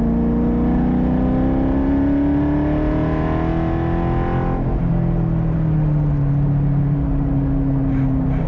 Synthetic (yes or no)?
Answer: no